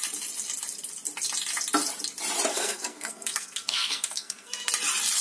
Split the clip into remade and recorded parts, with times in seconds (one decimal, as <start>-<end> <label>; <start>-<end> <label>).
0.0-2.5 recorded; 2.5-4.7 remade; 4.7-5.2 recorded